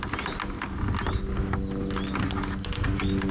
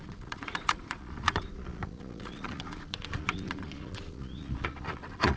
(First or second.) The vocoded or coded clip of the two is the second